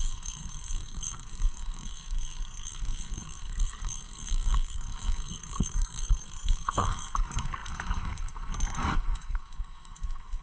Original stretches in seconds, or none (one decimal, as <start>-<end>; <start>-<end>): none